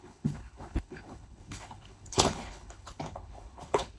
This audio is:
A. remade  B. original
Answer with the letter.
A